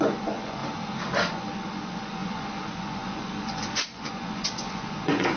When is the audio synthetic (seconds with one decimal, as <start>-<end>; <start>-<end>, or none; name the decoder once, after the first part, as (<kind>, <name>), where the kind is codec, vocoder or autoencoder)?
0.0-0.6 (vocoder, Vocos); 1.3-5.4